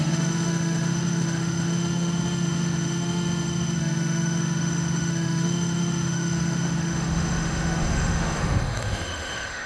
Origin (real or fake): fake